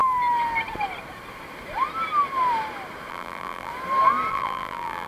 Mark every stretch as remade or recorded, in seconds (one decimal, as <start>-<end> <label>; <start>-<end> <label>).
0.0-3.1 recorded; 3.1-3.7 remade; 3.7-4.3 recorded; 4.3-5.1 remade